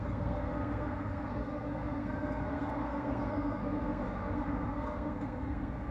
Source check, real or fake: fake